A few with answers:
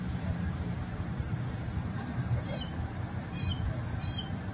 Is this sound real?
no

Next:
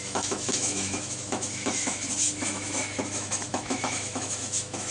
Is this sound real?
no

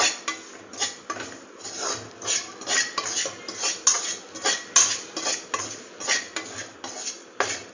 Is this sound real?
yes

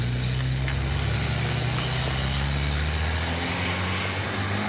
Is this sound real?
yes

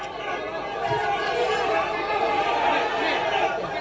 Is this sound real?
yes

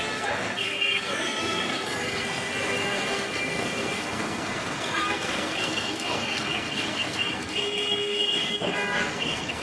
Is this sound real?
no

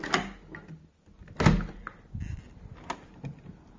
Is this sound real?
yes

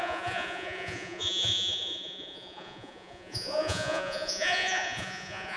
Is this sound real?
no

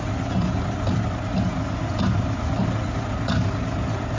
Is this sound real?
yes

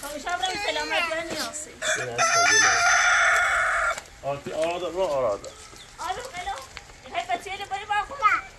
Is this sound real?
yes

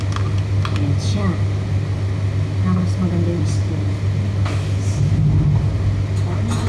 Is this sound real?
yes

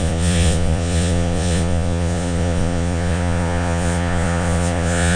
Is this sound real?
no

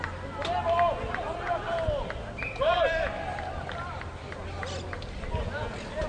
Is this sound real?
yes